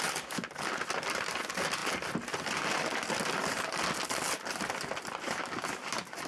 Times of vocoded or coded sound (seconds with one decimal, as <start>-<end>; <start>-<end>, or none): none